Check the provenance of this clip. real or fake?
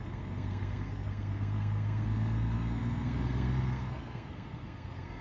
fake